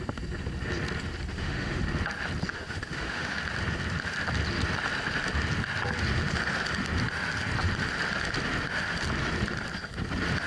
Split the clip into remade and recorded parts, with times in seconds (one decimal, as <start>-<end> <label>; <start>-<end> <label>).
0.0-1.3 recorded; 1.3-1.8 remade; 1.8-2.5 recorded; 2.5-3.4 remade; 3.4-10.5 recorded